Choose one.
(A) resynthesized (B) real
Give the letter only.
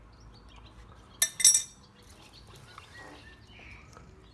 B